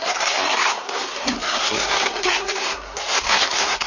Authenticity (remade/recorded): remade